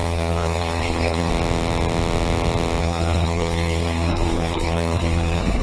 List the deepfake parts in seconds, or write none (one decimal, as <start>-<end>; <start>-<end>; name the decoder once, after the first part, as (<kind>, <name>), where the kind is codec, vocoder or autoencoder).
0.0-1.3 (codec, SNAC); 2.8-5.6